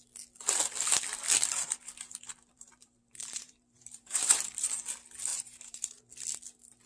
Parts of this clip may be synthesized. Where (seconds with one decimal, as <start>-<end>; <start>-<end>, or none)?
2.5-4.8; 5.3-6.0